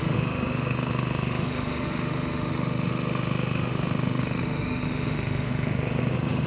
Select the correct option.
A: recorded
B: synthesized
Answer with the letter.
B